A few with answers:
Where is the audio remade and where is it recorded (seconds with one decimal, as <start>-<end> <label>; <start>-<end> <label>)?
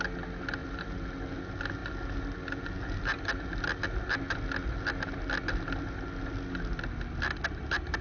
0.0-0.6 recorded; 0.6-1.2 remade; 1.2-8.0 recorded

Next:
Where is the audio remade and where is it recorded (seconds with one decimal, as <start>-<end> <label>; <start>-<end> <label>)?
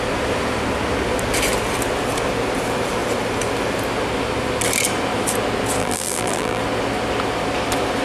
0.0-5.8 recorded; 5.8-6.6 remade; 6.6-8.0 recorded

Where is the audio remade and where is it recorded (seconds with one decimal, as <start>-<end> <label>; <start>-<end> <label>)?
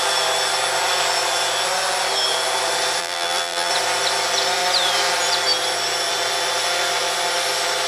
0.0-3.0 recorded; 3.0-3.7 remade; 3.7-7.9 recorded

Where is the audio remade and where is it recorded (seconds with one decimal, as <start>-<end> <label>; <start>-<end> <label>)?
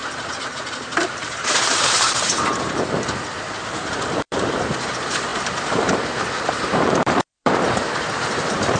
0.0-8.8 remade